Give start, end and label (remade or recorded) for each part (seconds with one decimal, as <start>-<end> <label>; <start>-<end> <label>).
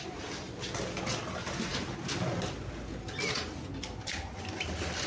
0.0-5.1 recorded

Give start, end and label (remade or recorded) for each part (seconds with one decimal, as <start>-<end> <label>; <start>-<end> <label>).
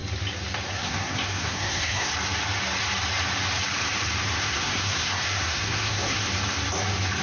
0.0-0.7 recorded; 0.7-2.1 remade; 2.1-4.4 recorded; 4.4-6.2 remade; 6.2-7.2 recorded